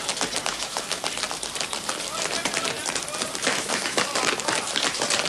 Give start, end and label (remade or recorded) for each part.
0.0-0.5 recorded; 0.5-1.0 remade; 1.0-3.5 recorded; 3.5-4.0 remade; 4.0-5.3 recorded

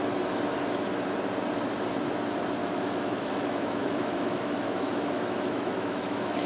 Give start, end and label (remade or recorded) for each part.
0.0-2.6 recorded; 2.6-6.5 remade

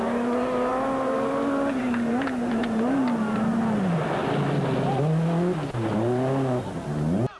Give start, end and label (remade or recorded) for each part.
0.0-7.4 recorded